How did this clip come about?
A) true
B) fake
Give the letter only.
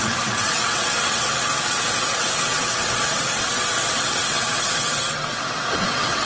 B